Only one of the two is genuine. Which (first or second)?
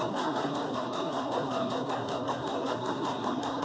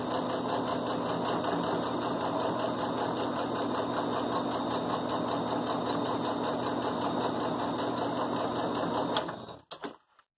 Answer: second